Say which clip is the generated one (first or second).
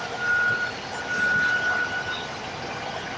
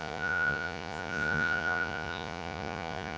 second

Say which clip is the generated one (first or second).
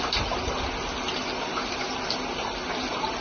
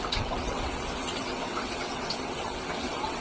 second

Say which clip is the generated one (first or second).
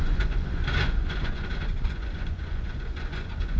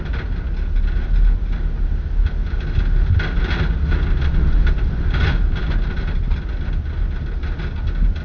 first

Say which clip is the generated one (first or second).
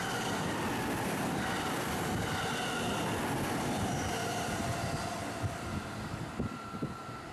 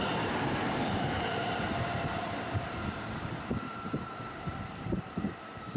second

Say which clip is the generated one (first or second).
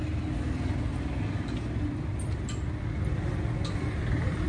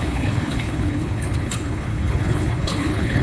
second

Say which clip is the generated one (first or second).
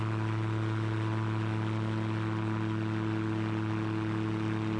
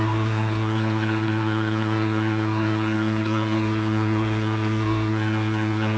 second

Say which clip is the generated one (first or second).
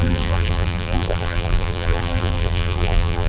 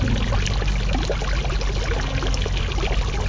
first